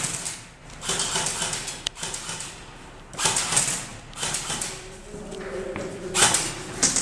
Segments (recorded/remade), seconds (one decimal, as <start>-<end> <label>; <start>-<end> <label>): 0.0-3.9 recorded; 3.9-6.5 remade; 6.5-7.0 recorded